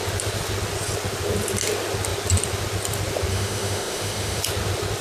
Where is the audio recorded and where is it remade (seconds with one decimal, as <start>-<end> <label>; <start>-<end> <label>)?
0.0-3.3 recorded; 3.3-4.4 remade; 4.4-5.0 recorded